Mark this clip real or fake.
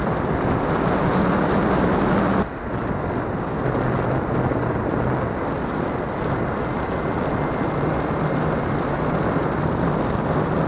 real